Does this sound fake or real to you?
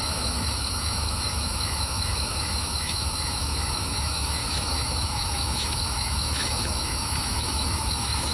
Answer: fake